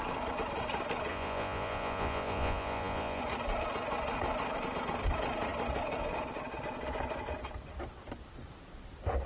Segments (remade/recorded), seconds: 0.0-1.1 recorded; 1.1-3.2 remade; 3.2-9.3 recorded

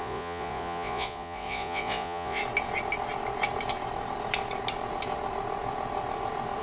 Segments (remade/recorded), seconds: 0.0-2.4 remade; 2.4-6.6 recorded

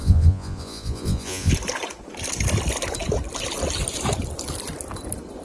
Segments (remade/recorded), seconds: 0.0-1.5 remade; 1.5-5.4 recorded

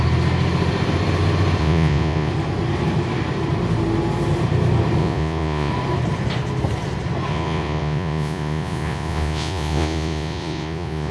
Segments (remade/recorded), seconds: 0.0-1.6 recorded; 1.6-2.3 remade; 2.3-5.0 recorded; 5.0-5.7 remade; 5.7-7.3 recorded; 7.3-11.1 remade

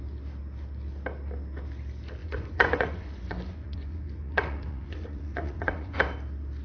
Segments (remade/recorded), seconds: 0.0-2.2 recorded; 2.2-6.0 remade; 6.0-6.6 recorded

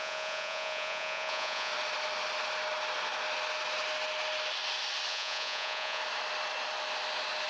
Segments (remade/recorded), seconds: 0.0-1.7 remade; 1.7-5.1 recorded; 5.1-6.0 remade; 6.0-7.5 recorded

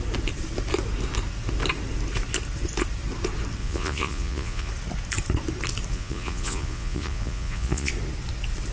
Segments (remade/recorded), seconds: 0.0-3.6 recorded; 3.6-4.7 remade; 4.7-5.9 recorded; 5.9-7.9 remade; 7.9-8.7 recorded

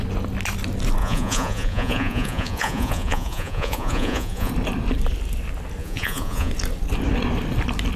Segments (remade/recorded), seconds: 0.0-1.0 recorded; 1.0-4.5 remade; 4.5-5.8 recorded; 5.8-6.5 remade; 6.5-8.0 recorded